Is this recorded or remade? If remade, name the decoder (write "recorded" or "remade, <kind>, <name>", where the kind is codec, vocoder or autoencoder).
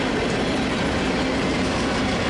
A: recorded